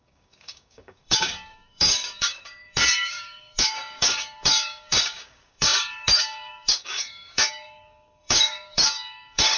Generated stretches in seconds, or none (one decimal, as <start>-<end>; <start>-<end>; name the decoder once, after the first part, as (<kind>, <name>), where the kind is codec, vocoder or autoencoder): 0.0-9.6 (codec, DAC)